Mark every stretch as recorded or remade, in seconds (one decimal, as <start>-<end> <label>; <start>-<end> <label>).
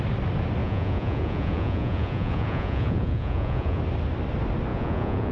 0.0-0.6 recorded; 0.6-3.8 remade; 3.8-4.7 recorded; 4.7-5.3 remade